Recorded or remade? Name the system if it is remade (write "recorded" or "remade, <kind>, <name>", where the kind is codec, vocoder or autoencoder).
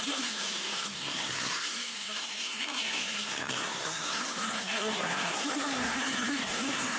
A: remade, codec, SNAC